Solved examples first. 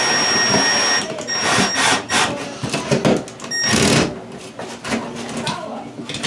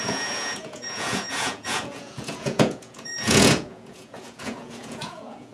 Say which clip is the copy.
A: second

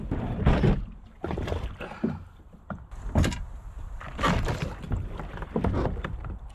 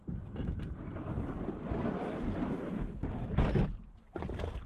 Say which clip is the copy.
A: first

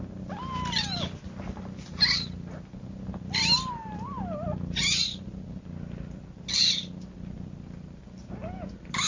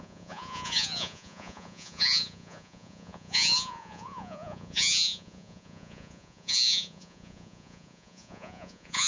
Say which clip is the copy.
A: second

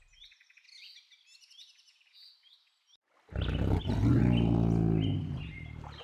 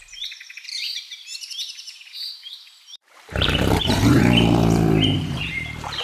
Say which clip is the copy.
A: second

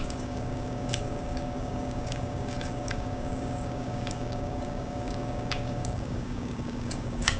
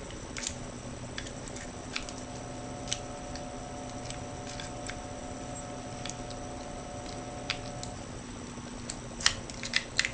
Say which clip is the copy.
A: first